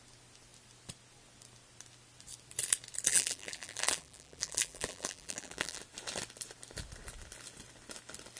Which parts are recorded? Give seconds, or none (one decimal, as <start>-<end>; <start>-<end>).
0.0-3.1; 5.8-8.4